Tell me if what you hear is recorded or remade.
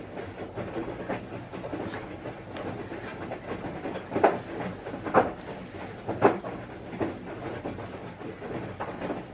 recorded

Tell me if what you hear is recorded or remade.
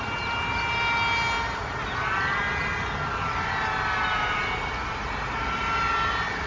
recorded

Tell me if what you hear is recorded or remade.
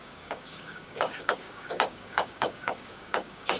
remade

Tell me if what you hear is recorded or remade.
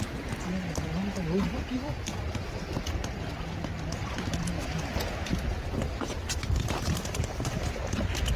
recorded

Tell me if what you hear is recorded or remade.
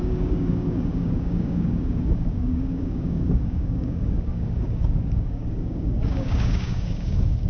remade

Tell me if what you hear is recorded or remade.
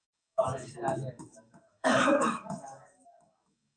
remade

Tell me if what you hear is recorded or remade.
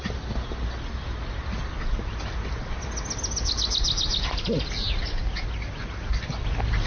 recorded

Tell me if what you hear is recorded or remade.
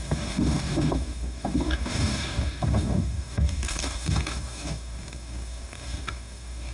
remade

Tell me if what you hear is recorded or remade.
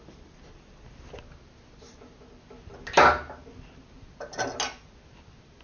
recorded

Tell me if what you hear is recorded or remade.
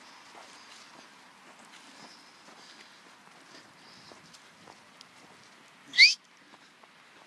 recorded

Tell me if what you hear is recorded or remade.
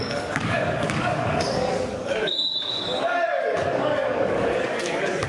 remade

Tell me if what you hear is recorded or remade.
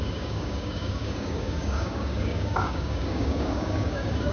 remade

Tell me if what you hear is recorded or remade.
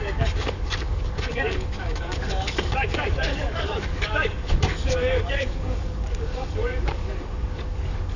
remade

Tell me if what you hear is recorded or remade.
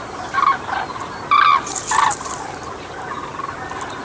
recorded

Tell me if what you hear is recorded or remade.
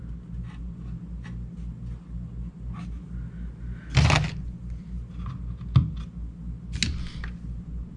recorded